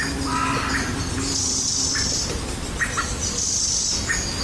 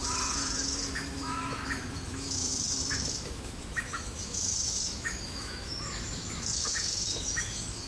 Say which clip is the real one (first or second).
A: first